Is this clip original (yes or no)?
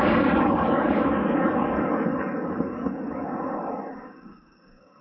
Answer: no